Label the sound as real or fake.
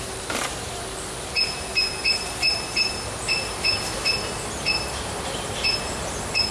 real